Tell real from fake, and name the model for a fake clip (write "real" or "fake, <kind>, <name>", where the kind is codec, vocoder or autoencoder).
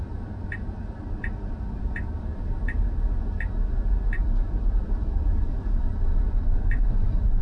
real